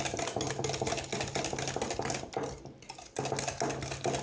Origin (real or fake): real